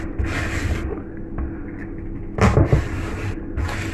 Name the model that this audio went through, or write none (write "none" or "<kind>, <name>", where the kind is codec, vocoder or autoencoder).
none